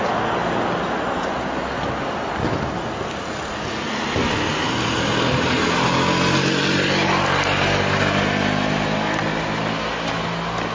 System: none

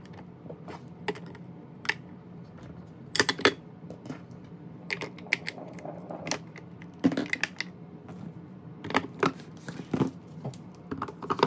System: none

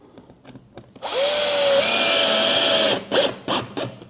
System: none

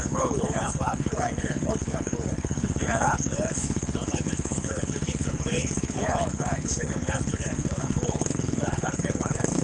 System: codec, HILCodec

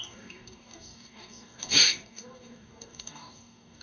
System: codec, DAC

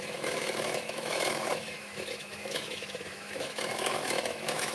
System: autoencoder, DAC-VAE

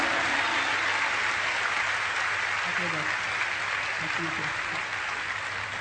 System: none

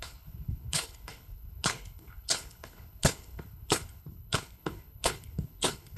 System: codec, HILCodec